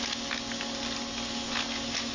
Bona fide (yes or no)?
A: yes